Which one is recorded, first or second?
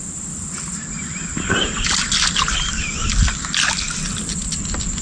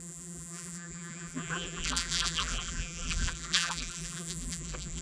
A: first